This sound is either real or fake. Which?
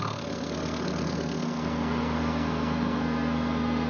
fake